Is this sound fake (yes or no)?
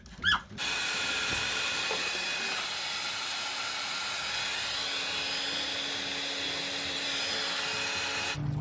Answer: no